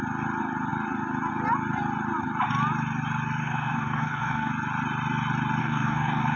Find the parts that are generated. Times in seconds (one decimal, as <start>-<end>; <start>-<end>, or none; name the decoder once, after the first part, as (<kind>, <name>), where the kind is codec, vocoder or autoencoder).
3.4-4.5 (codec, DAC); 5.6-6.4